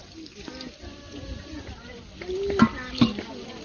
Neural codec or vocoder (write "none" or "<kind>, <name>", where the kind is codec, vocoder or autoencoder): none